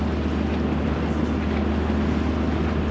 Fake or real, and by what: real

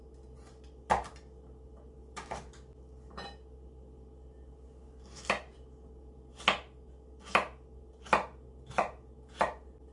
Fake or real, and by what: real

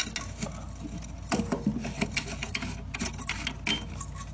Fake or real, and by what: real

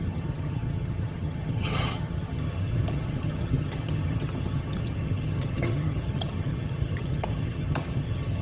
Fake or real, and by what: fake, vocoder, HiFi-GAN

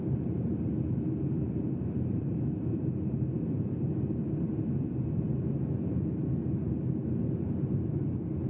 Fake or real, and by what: fake, vocoder, BigVGAN v2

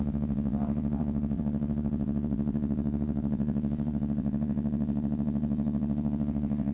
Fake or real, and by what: fake, vocoder, WaveNeXt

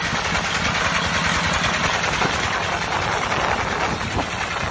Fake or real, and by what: real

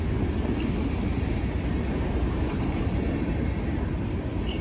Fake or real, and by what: real